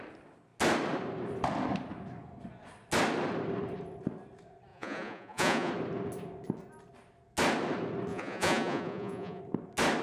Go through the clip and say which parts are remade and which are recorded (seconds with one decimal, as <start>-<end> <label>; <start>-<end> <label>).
0.0-4.7 recorded; 4.7-5.7 remade; 5.7-8.1 recorded; 8.1-9.4 remade; 9.4-10.0 recorded

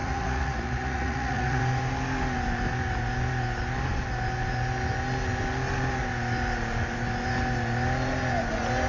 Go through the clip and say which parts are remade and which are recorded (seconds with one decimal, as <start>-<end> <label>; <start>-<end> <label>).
0.0-1.6 remade; 1.6-8.9 recorded

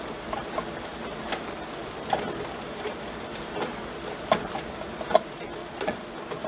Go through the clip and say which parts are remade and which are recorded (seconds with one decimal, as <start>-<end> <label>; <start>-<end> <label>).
0.0-5.6 recorded; 5.6-6.1 remade; 6.1-6.5 recorded

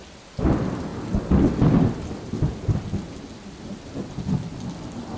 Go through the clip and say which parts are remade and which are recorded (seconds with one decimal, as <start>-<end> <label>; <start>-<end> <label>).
0.0-5.2 recorded

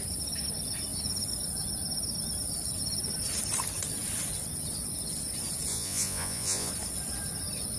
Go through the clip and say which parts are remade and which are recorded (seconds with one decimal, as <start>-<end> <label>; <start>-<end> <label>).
0.0-5.7 recorded; 5.7-6.7 remade; 6.7-7.8 recorded

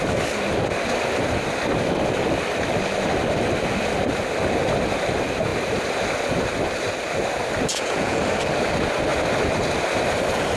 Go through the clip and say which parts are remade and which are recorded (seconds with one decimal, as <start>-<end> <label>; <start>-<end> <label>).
0.0-7.7 recorded; 7.7-8.2 remade; 8.2-10.6 recorded

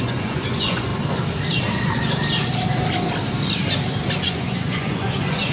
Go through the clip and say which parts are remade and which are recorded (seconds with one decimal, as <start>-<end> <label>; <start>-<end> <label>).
0.0-0.9 remade; 0.9-4.2 recorded; 4.2-5.5 remade

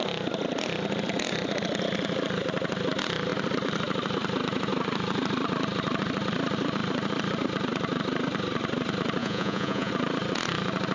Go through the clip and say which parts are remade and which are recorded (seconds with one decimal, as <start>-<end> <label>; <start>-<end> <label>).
0.0-9.2 recorded; 9.2-9.9 remade; 9.9-10.9 recorded